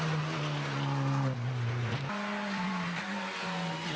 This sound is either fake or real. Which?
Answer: real